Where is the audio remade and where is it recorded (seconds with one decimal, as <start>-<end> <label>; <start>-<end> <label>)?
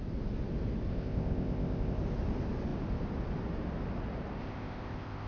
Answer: 0.0-0.9 recorded; 0.9-2.0 remade; 2.0-4.4 recorded; 4.4-5.3 remade